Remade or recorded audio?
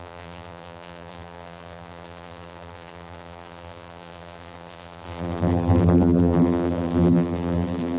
remade